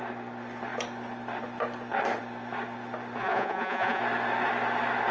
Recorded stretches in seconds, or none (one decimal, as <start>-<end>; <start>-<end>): 0.0-3.2; 4.0-5.1